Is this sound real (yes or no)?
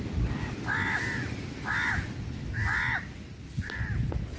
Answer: yes